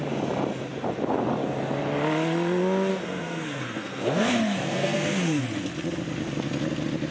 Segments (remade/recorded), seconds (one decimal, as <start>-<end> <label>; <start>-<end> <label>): 0.0-2.9 recorded; 2.9-5.4 remade; 5.4-7.1 recorded